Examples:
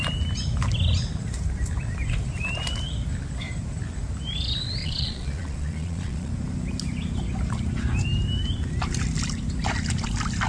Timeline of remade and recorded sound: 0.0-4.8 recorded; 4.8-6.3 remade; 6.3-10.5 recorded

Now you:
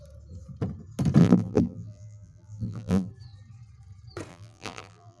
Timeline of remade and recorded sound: 0.0-1.2 recorded; 1.2-3.1 remade; 3.1-4.3 recorded; 4.3-5.2 remade

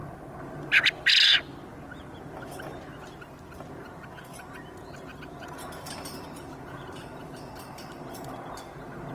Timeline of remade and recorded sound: 0.0-5.1 recorded; 5.1-9.1 remade

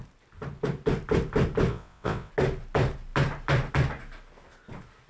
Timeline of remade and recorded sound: 0.0-1.7 recorded; 1.7-2.3 remade; 2.3-5.1 recorded

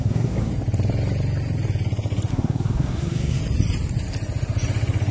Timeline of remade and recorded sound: 0.0-0.5 remade; 0.5-2.3 recorded; 2.3-3.4 remade; 3.4-5.1 recorded

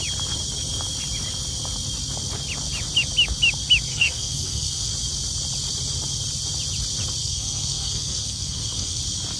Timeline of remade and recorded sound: 0.0-3.9 recorded; 3.9-4.9 remade; 4.9-7.2 recorded; 7.2-9.0 remade; 9.0-9.4 recorded